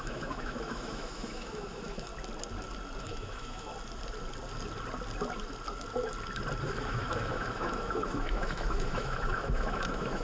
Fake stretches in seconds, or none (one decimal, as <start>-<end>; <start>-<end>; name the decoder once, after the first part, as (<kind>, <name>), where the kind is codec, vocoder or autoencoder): 0.0-2.1 (autoencoder, DAC-VAE); 3.0-3.7; 6.6-10.2